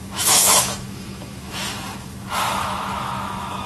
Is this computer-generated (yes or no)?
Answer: yes